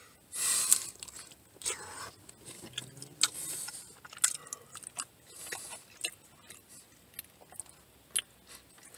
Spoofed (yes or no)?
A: no